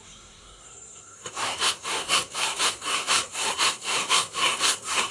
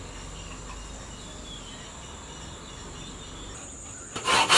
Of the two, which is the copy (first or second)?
first